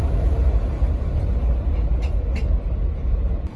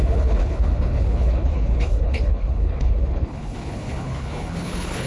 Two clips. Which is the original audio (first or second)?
first